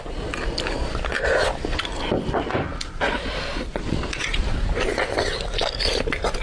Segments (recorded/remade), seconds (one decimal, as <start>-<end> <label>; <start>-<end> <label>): 0.0-3.7 recorded; 3.7-4.4 remade; 4.4-6.4 recorded